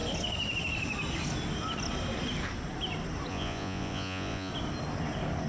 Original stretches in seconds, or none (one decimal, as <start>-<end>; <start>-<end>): 0.0-3.3; 4.5-5.5

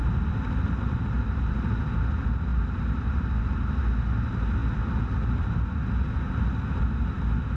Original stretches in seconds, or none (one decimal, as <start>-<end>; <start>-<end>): 1.9-2.5; 3.1-7.6

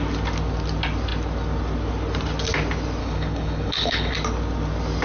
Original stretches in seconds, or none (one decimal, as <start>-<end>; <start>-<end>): 0.0-3.0; 4.1-5.0

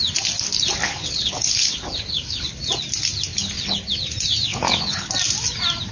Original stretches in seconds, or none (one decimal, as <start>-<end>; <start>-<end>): 0.0-0.8; 2.6-3.3; 3.9-4.5; 5.1-5.9

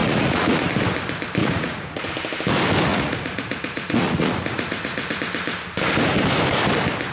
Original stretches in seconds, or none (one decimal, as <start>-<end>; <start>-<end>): 0.6-1.4; 2.1-2.9; 5.2-7.1